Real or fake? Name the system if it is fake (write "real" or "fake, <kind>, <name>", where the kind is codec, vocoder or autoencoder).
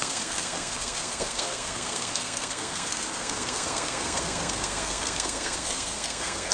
fake, codec, SNAC